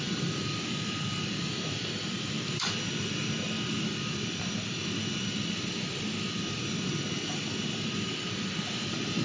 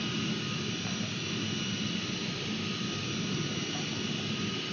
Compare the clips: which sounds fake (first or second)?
first